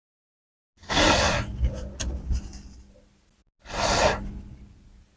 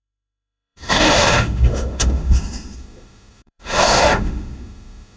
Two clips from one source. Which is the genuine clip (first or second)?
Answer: first